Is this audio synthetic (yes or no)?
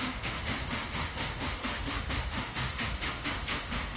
yes